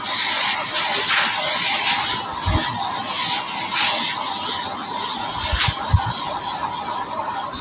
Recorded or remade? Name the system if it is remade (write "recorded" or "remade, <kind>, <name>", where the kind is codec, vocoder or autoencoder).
recorded